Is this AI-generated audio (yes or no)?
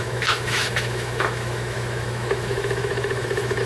yes